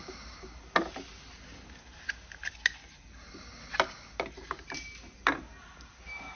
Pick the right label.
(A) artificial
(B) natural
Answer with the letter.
B